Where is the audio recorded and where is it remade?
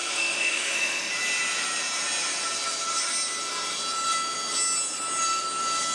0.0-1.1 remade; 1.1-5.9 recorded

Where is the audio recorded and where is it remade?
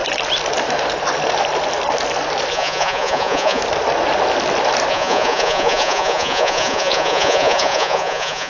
0.0-2.5 recorded; 2.5-3.6 remade; 3.6-4.9 recorded; 4.9-8.5 remade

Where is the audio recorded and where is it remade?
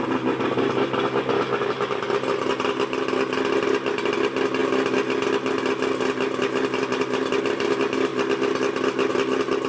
0.0-9.7 recorded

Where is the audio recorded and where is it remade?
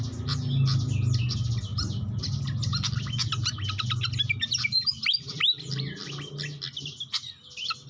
0.0-7.9 recorded